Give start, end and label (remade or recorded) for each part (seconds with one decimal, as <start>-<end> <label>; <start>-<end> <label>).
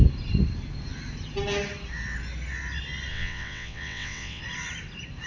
0.0-3.1 recorded; 3.1-4.4 remade; 4.4-5.3 recorded